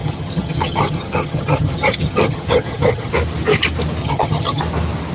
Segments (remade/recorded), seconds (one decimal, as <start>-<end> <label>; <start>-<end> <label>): 0.0-3.1 remade; 3.1-4.0 recorded; 4.0-4.6 remade; 4.6-5.1 recorded